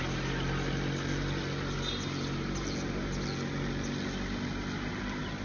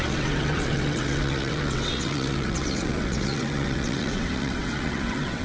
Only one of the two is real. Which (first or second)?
first